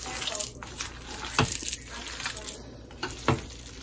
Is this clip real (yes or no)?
yes